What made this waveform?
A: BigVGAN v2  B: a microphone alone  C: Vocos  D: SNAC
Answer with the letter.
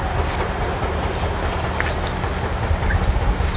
B